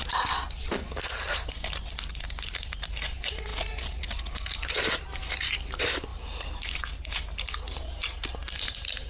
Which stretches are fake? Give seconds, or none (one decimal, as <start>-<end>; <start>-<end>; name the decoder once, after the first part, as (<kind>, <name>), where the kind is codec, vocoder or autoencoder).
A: none